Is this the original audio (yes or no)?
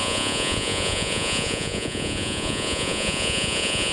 no